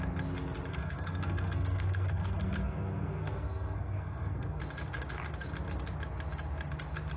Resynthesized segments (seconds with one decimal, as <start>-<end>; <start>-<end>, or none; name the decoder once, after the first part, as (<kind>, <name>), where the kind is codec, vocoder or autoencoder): 0.7-4.6 (codec, SNAC)